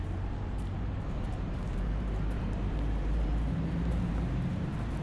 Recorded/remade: remade